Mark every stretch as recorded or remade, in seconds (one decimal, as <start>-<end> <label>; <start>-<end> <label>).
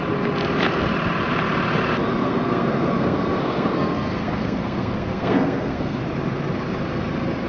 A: 0.0-2.2 recorded; 2.2-6.0 remade; 6.0-7.5 recorded